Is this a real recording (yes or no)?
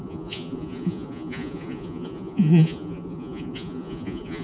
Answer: no